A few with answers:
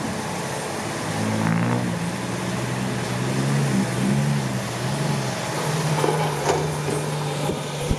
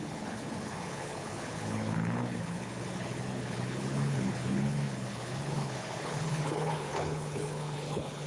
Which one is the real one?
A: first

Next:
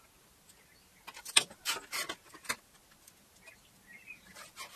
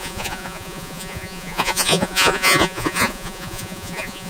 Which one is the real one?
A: first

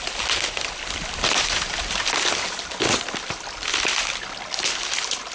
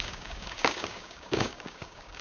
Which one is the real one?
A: first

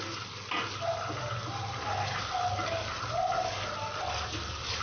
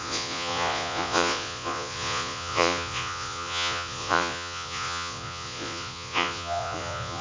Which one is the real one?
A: first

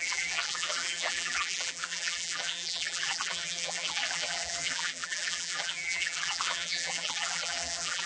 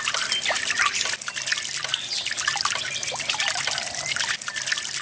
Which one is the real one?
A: second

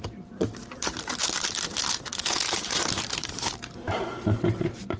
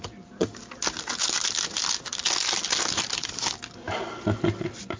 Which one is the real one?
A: second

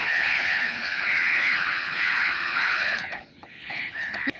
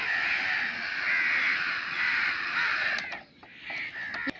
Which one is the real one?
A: second